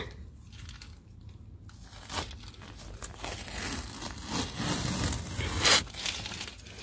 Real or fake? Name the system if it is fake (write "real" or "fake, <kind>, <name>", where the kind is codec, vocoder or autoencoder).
real